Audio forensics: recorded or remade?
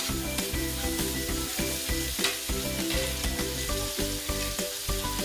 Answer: recorded